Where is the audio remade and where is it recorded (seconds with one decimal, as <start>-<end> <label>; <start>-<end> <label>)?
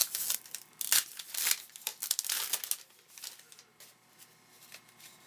0.0-5.3 recorded